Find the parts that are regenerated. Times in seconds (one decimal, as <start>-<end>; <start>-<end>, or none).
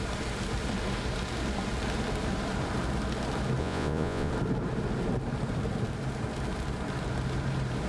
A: 3.6-4.3